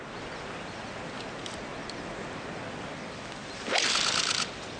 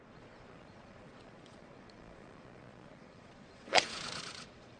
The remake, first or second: second